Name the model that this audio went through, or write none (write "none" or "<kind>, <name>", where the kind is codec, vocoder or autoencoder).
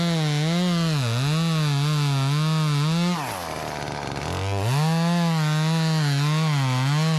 none